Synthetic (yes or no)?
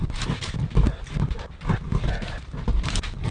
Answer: no